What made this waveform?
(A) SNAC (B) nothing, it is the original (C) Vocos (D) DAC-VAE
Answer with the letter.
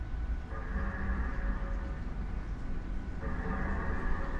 B